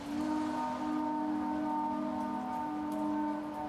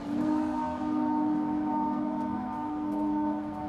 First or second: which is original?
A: first